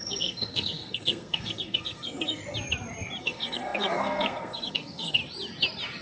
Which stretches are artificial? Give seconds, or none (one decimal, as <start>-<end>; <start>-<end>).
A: 0.0-2.4; 3.2-5.2